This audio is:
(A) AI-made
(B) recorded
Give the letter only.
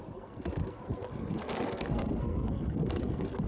A